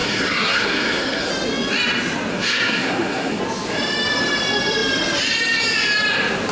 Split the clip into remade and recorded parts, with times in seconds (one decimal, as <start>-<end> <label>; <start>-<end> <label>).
0.0-1.3 remade; 1.3-2.3 recorded; 2.3-3.4 remade; 3.4-6.5 recorded